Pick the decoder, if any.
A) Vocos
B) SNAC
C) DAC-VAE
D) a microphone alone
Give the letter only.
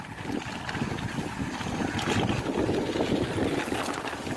D